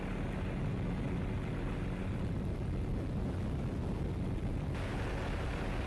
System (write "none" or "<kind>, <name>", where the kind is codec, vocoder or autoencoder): none